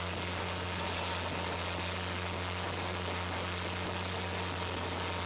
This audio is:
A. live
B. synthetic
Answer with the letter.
A